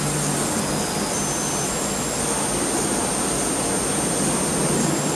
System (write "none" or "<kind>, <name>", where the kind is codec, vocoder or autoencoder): none